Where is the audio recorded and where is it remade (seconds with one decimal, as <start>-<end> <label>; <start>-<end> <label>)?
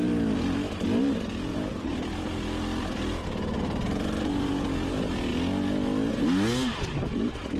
0.0-1.5 recorded; 1.5-4.5 remade; 4.5-7.6 recorded